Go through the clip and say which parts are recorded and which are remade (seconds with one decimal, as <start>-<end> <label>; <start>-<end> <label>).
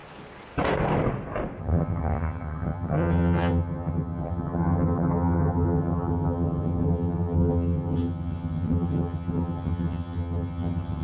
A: 0.0-1.6 recorded; 1.6-11.0 remade